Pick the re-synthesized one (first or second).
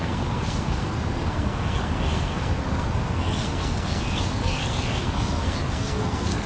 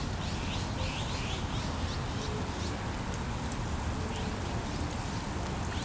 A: first